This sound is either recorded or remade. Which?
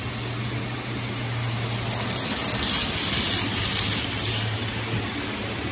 recorded